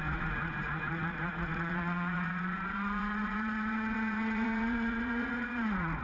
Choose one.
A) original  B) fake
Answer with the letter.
B